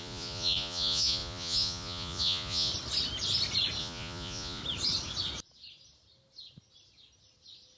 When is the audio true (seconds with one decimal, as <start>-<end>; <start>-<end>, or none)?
2.7-3.8; 4.6-7.8

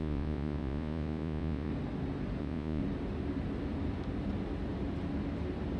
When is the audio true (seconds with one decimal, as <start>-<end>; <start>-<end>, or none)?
1.7-2.4; 2.8-5.8

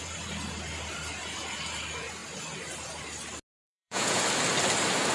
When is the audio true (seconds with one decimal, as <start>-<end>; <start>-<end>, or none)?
0.0-3.6; 4.2-5.1

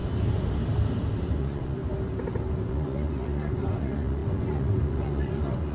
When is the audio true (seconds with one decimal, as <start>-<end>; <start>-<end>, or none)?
0.0-1.4; 1.8-2.7